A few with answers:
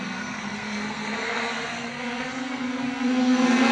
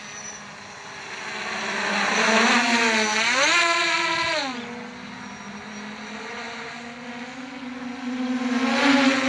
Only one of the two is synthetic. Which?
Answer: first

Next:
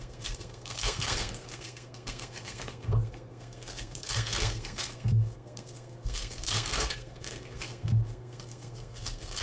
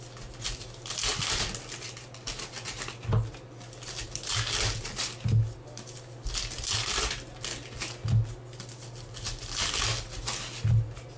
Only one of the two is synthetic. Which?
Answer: first